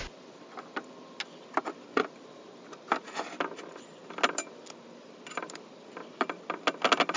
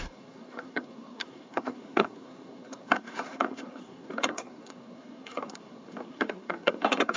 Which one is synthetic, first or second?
second